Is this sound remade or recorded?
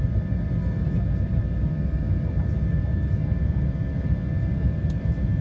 recorded